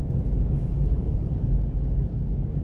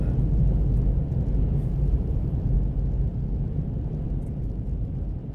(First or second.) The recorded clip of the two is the second